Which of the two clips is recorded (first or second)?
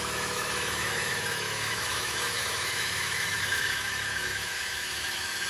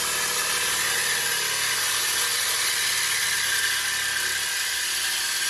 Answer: second